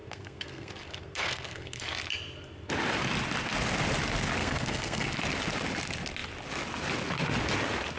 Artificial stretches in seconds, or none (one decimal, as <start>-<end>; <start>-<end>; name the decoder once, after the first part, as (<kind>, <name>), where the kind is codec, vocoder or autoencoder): 0.0-1.8 (codec, SNAC); 4.4-5.1